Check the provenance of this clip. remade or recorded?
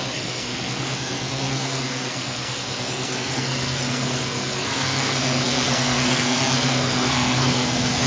remade